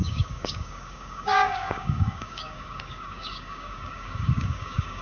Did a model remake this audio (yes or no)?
yes